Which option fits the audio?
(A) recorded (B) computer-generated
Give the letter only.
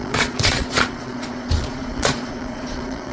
B